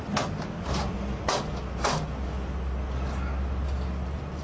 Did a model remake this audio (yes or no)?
no